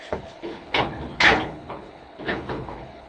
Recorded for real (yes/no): no